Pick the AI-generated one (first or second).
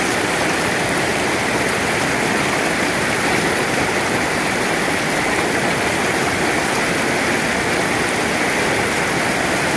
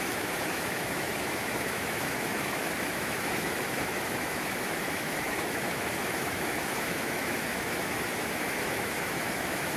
second